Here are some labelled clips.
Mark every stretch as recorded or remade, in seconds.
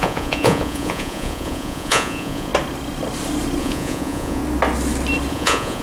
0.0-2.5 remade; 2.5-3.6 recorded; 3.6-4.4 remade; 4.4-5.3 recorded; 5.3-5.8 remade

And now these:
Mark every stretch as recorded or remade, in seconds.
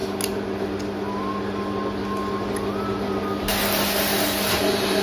0.0-5.0 recorded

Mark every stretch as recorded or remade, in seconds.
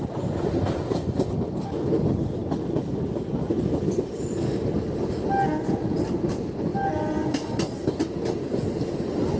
0.0-9.4 recorded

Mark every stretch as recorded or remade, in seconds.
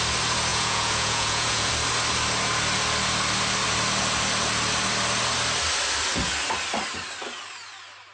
0.0-0.5 recorded; 0.5-1.7 remade; 1.7-8.1 recorded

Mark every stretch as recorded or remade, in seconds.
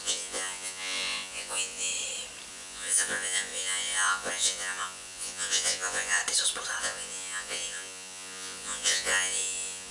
0.0-1.9 remade; 1.9-2.5 recorded; 2.5-6.2 remade; 6.2-6.8 recorded; 6.8-9.9 remade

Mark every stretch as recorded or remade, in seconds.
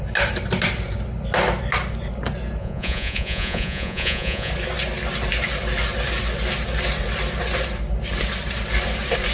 0.0-2.6 recorded; 2.6-4.5 remade; 4.5-9.3 recorded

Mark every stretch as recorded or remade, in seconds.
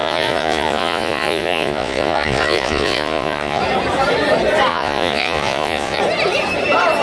0.0-3.6 remade; 3.6-4.7 recorded; 4.7-6.0 remade; 6.0-7.0 recorded